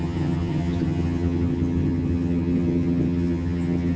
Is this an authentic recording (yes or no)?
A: no